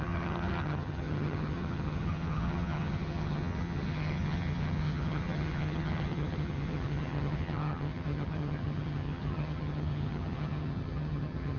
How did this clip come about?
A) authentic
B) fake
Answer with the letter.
B